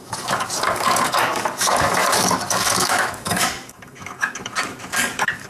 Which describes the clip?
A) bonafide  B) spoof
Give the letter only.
B